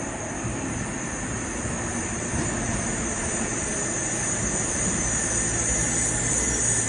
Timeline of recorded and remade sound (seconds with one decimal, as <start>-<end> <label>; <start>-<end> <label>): 0.0-1.9 recorded; 1.9-2.5 remade; 2.5-2.9 recorded; 2.9-3.7 remade; 3.7-6.9 recorded